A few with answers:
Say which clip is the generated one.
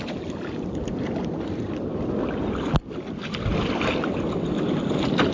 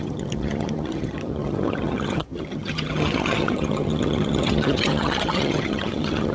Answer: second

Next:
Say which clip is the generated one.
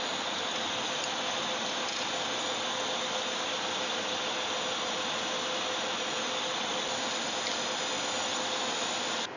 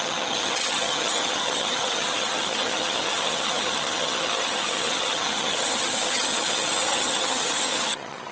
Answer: second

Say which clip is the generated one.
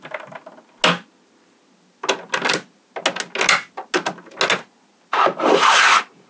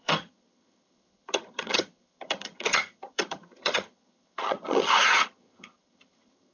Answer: second